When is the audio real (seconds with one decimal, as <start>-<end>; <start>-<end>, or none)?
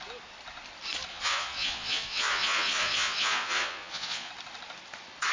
0.0-1.1; 4.3-5.3